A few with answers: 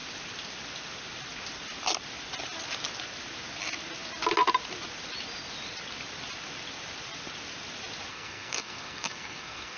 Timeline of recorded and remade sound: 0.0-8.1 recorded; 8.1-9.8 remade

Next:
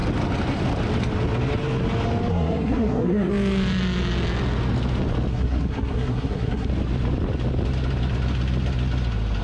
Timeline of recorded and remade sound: 0.0-2.3 recorded; 2.3-3.3 remade; 3.3-5.3 recorded; 5.3-6.7 remade; 6.7-9.4 recorded

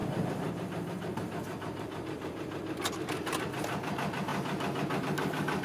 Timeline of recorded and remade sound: 0.0-5.6 recorded

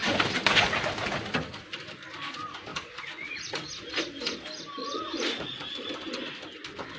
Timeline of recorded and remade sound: 0.0-2.7 recorded; 2.7-3.7 remade; 3.7-4.8 recorded; 4.8-5.9 remade; 5.9-7.0 recorded

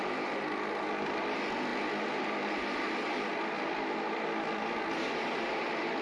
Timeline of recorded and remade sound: 0.0-6.0 recorded

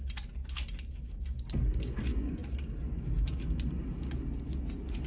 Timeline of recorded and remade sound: 0.0-5.1 recorded

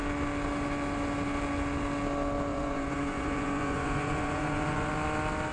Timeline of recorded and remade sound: 0.0-2.5 recorded; 2.5-4.9 remade; 4.9-5.5 recorded

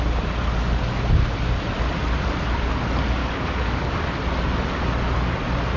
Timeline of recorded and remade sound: 0.0-3.2 recorded; 3.2-4.0 remade; 4.0-5.8 recorded